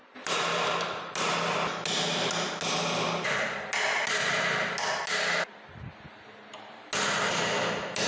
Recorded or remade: recorded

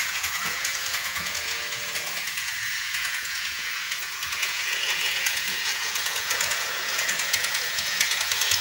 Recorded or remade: remade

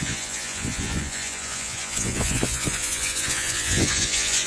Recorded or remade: remade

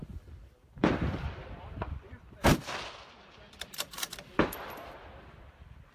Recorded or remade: remade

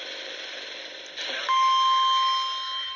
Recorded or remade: recorded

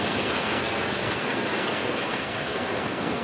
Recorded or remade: remade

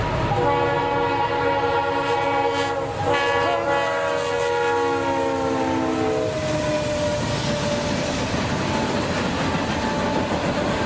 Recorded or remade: recorded